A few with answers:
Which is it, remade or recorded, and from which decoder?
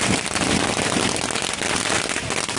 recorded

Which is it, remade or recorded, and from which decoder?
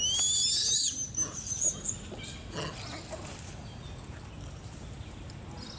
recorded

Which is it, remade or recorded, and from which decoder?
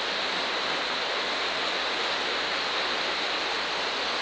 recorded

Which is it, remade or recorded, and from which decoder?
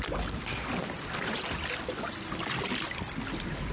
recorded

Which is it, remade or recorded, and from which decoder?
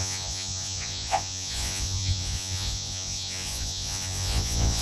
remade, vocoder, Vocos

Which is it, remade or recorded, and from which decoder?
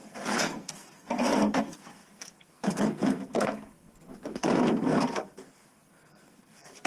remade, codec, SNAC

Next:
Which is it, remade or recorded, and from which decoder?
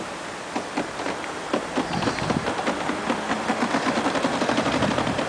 recorded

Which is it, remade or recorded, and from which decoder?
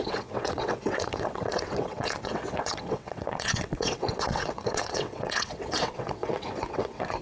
remade, vocoder, WaveNeXt